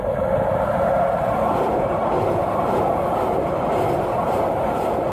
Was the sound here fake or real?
real